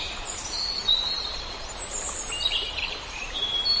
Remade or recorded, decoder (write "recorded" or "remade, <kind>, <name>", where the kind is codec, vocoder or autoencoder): remade, vocoder, BigVGAN v2